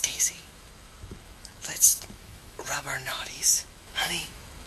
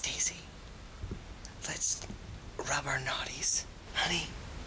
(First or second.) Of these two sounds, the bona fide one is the second